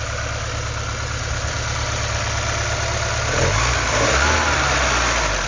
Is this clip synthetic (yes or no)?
no